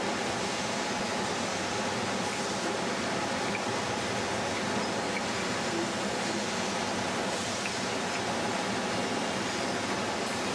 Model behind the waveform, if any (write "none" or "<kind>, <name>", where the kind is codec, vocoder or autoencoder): none